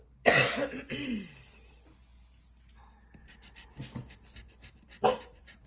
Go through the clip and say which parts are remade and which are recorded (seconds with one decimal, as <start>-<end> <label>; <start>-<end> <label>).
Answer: 0.0-5.7 recorded